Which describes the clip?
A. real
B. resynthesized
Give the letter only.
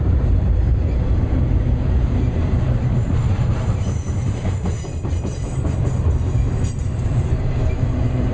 B